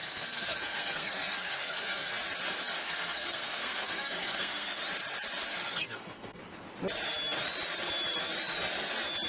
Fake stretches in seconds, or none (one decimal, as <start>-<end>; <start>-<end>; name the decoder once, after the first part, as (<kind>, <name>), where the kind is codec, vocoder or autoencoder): 0.0-2.1 (codec, SNAC); 2.8-4.8; 5.5-6.4